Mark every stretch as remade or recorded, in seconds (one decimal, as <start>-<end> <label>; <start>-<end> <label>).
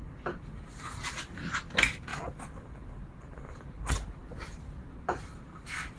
0.0-6.0 recorded